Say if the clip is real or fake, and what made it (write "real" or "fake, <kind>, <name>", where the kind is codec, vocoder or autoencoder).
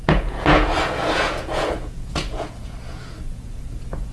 fake, vocoder, Vocos